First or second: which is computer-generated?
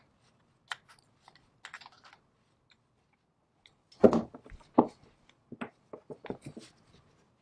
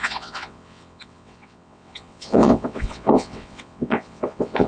second